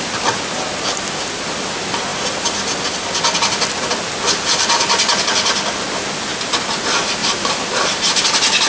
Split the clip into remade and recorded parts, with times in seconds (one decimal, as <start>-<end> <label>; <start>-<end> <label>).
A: 0.0-7.2 recorded; 7.2-8.1 remade; 8.1-8.7 recorded